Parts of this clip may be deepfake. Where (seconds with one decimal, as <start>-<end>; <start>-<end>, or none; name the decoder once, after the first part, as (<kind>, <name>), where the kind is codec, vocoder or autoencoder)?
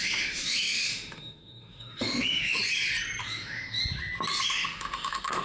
0.0-2.6 (autoencoder, DAC-VAE); 3.2-3.8; 4.5-5.4